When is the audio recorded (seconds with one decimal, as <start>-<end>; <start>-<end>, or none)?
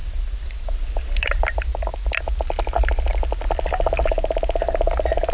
0.6-5.3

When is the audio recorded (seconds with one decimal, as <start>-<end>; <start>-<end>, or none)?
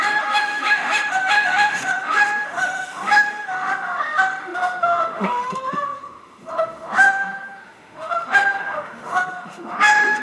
none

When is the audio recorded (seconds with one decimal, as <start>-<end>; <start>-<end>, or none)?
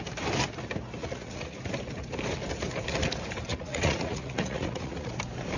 0.0-1.0; 1.6-3.5; 5.1-5.6